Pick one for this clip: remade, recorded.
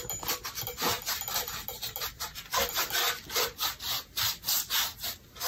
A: recorded